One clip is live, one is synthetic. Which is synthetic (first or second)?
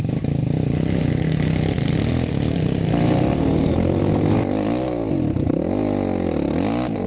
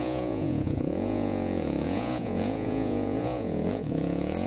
second